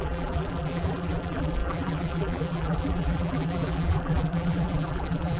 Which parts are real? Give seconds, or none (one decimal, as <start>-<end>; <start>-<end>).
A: none